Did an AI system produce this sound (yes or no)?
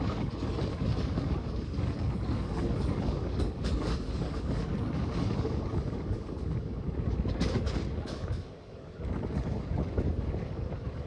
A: yes